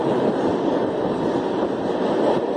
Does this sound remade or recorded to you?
recorded